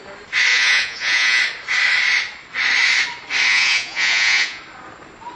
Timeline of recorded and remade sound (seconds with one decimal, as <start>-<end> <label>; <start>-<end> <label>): 0.0-0.5 recorded; 0.5-1.4 remade; 1.4-3.5 recorded; 3.5-4.6 remade; 4.6-5.4 recorded